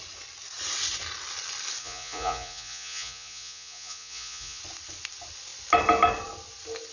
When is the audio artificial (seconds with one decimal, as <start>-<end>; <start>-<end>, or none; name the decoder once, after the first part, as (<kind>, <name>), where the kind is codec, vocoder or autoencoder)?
1.8-4.6 (vocoder, Vocos)

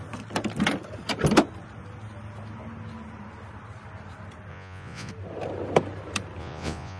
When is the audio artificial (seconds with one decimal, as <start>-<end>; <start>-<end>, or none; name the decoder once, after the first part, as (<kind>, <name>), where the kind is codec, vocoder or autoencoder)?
4.5-5.1 (vocoder, Vocos); 6.4-7.0

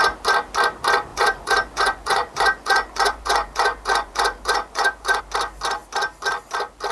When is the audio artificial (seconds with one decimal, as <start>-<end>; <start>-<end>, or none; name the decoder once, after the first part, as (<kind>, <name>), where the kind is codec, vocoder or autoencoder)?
1.1-5.2 (vocoder, Vocos)

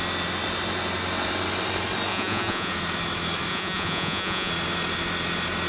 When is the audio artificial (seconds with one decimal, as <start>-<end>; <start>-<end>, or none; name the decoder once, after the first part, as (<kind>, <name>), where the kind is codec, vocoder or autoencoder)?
2.1-2.7 (vocoder, Vocos); 3.5-4.5

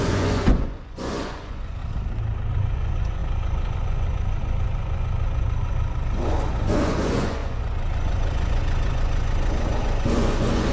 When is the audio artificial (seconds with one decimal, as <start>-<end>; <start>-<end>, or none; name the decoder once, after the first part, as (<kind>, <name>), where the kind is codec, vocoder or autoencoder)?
0.0-1.8 (vocoder, Vocos); 2.5-10.7

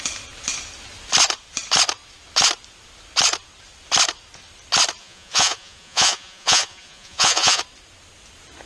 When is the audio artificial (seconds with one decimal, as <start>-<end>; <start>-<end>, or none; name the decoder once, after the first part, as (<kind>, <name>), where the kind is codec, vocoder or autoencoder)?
5.0-7.6 (vocoder, Vocos)